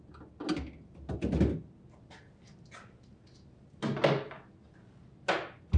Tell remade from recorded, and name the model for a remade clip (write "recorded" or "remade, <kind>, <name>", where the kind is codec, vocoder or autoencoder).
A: recorded